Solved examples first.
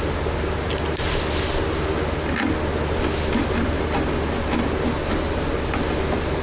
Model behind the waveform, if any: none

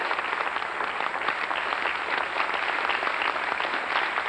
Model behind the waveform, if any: none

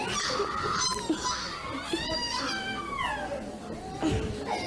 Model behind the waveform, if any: none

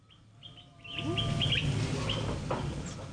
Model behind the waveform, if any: none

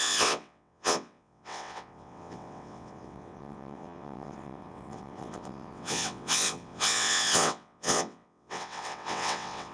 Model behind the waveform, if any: vocoder, WaveNeXt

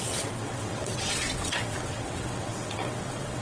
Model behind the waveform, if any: vocoder, WaveNeXt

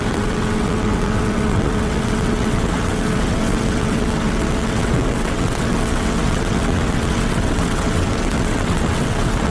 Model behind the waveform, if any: vocoder, WaveNeXt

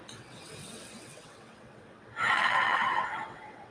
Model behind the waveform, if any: vocoder, WaveNeXt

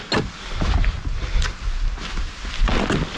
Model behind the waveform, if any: none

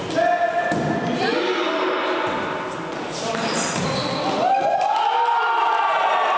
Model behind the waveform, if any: none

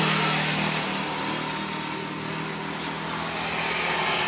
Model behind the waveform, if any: none